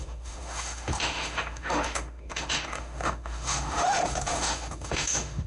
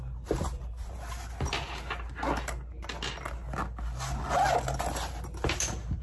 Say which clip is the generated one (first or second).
first